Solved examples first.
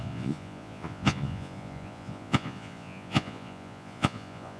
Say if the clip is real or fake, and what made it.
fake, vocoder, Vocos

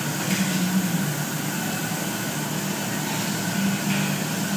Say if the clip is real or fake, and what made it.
real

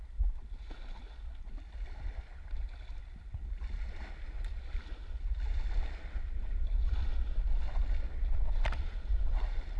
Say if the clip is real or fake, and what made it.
real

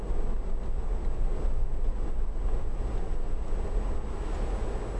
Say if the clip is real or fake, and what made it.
real